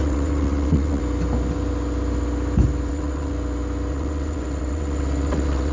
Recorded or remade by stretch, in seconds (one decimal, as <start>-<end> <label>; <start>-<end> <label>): 0.0-1.0 remade; 1.0-2.9 recorded; 2.9-3.3 remade; 3.3-3.9 recorded; 3.9-5.7 remade